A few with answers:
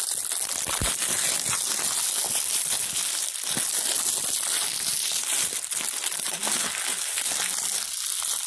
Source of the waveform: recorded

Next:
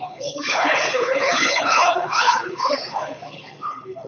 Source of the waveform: remade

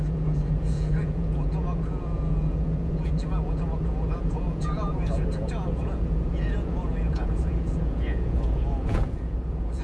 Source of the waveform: remade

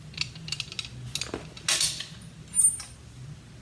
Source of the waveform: recorded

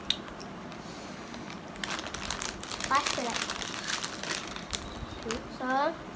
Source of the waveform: recorded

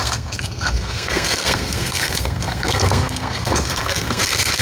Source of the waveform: remade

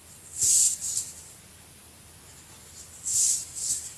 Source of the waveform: recorded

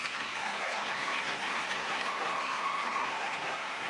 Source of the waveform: remade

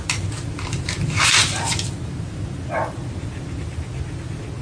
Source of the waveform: recorded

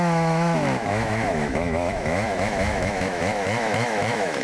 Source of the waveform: remade